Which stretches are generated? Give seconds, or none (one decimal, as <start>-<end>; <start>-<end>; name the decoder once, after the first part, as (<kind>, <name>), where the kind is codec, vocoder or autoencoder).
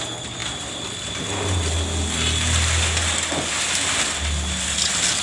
none